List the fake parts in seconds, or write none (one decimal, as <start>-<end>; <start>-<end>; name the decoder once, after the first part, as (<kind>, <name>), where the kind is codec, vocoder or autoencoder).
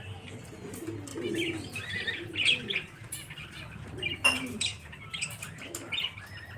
none